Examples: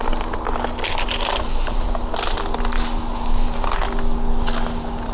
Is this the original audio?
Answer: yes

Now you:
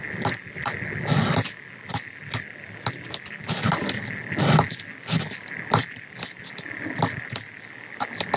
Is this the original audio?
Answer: yes